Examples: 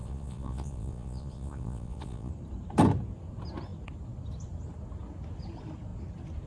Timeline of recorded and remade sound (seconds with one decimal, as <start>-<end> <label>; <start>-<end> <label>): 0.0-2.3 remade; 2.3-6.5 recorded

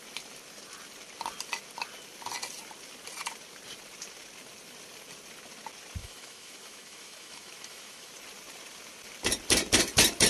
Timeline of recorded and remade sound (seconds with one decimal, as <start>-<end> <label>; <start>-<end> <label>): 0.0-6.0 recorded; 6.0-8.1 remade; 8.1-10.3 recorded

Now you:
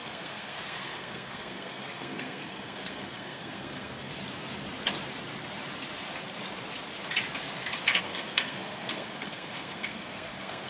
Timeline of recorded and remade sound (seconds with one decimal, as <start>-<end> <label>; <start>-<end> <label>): 0.0-4.1 remade; 4.1-8.0 recorded; 8.0-10.7 remade

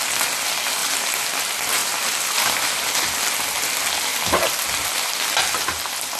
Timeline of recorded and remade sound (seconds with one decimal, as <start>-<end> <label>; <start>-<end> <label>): 0.0-0.8 recorded; 0.8-1.4 remade; 1.4-1.8 recorded; 1.8-2.6 remade; 2.6-4.1 recorded; 4.1-4.6 remade; 4.6-6.2 recorded

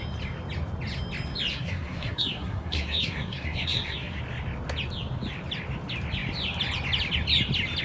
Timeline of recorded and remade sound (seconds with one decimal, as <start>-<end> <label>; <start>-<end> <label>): 0.0-1.5 recorded; 1.5-4.2 remade; 4.2-7.8 recorded

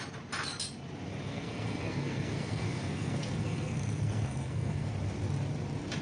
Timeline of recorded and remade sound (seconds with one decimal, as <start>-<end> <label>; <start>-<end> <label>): 0.0-1.3 recorded; 1.3-4.9 remade; 4.9-6.0 recorded

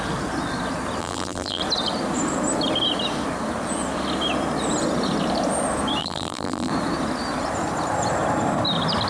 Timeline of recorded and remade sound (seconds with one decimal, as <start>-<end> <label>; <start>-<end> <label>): 0.0-1.0 recorded; 1.0-1.6 remade; 1.6-6.0 recorded; 6.0-6.7 remade; 6.7-9.1 recorded